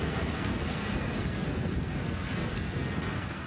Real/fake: fake